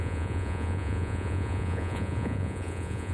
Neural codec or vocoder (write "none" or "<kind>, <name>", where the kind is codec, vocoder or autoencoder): vocoder, Vocos